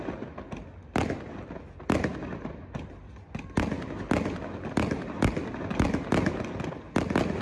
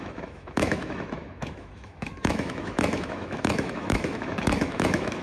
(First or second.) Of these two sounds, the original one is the first